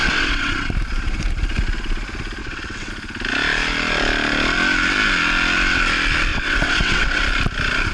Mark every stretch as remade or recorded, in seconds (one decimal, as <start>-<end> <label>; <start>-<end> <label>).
0.0-0.7 remade; 0.7-2.4 recorded; 2.4-2.9 remade; 2.9-6.3 recorded; 6.3-7.2 remade; 7.2-7.9 recorded

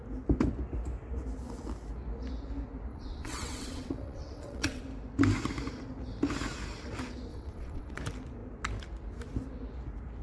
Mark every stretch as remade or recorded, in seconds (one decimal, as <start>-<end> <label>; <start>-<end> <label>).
0.0-2.9 recorded; 2.9-4.8 remade; 4.8-7.3 recorded; 7.3-8.0 remade; 8.0-10.2 recorded